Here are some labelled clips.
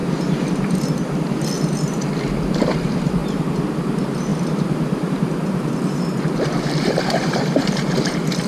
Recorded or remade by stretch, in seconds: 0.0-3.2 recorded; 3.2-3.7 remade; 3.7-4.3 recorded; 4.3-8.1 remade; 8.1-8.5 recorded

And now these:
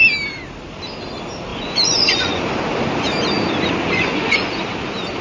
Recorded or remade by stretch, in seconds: 0.0-1.5 recorded; 1.5-2.4 remade; 2.4-3.9 recorded; 3.9-4.5 remade; 4.5-5.2 recorded

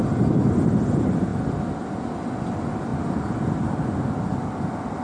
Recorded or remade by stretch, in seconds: 0.0-5.0 recorded